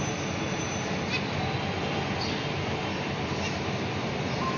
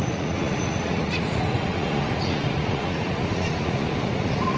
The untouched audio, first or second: first